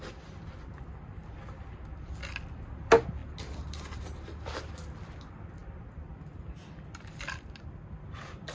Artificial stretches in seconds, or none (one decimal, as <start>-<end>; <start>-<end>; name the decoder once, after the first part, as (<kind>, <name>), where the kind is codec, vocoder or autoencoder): none